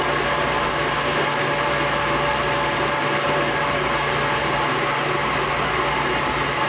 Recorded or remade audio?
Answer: recorded